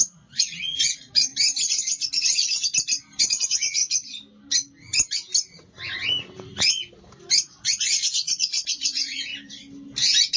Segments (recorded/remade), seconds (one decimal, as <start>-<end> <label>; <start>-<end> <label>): 0.0-1.3 remade; 1.3-3.2 recorded; 3.2-3.8 remade; 3.8-7.3 recorded; 7.3-9.3 remade; 9.3-10.4 recorded